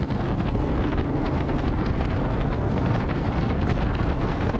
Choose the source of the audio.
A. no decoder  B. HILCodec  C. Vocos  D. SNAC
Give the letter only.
D